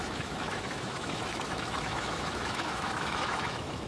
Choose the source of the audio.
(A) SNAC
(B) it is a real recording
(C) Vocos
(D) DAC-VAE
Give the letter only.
D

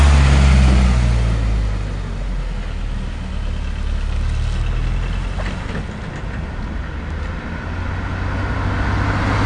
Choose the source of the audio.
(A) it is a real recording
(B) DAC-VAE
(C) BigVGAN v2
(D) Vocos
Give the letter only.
A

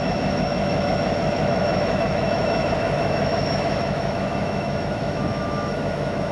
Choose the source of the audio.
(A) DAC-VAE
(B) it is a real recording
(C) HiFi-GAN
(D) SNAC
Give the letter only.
A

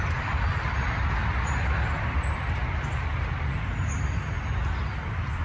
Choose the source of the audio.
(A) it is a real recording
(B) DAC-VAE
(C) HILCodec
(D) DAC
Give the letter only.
A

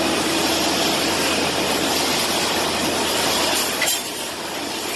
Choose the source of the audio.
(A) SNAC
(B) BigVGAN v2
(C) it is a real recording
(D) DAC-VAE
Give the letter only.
C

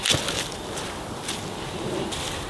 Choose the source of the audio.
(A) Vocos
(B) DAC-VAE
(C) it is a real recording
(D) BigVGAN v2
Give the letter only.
C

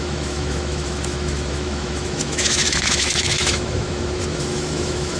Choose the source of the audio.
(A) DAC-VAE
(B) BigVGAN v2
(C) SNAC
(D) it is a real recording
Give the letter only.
A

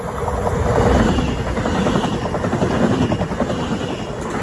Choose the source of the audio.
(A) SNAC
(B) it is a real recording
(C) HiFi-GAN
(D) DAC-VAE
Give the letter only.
B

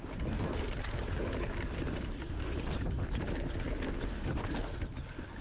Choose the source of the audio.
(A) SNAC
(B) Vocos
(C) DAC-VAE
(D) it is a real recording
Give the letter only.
D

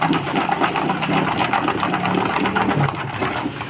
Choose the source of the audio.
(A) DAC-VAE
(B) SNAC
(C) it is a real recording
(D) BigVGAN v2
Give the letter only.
C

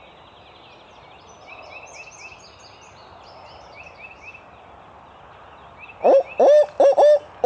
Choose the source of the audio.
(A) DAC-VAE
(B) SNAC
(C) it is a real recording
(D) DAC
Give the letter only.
C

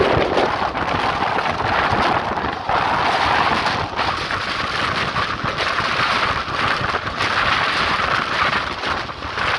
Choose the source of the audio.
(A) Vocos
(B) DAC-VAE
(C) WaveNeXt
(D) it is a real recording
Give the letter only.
D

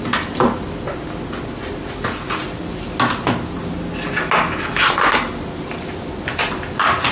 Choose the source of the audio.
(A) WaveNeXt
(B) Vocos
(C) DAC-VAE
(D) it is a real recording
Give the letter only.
D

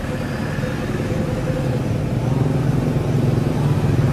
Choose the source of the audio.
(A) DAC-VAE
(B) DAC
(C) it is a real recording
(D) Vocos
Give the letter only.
C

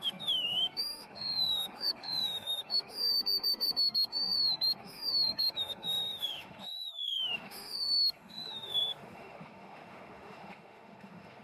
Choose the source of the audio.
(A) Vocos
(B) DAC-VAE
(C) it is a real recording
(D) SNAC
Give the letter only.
B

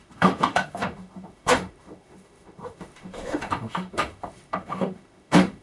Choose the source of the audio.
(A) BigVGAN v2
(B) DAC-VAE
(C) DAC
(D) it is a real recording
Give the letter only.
B